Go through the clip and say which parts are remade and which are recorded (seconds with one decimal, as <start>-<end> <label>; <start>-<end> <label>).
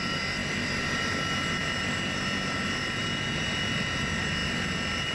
0.0-5.1 recorded